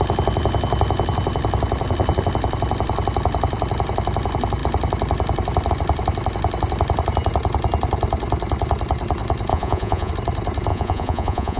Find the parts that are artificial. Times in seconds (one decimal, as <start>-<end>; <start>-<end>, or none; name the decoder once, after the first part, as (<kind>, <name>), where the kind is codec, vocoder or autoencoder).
9.5-10.1 (vocoder, Vocos); 10.7-11.6